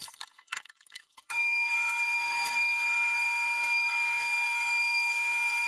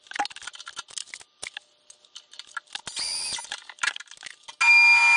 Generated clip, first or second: first